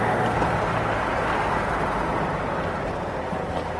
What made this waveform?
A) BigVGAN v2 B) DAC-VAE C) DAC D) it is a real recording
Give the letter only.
D